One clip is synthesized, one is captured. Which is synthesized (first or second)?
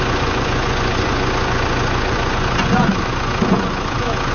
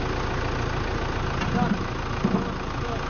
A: first